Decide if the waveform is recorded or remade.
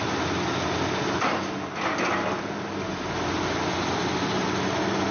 recorded